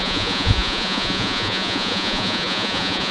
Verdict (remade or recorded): remade